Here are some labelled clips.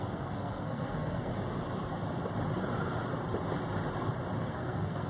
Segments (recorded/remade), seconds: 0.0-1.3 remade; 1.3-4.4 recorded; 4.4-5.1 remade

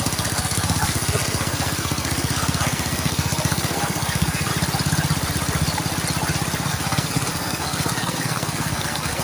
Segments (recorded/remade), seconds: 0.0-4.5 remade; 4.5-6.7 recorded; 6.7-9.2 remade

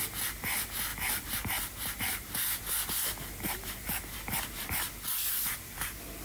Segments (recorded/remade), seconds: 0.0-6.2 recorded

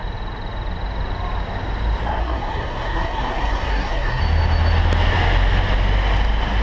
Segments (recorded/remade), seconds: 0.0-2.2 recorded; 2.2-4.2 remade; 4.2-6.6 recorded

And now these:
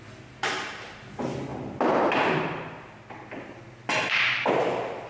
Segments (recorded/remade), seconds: 0.0-5.1 recorded